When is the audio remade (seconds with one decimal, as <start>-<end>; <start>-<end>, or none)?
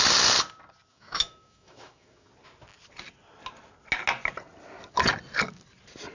0.9-2.3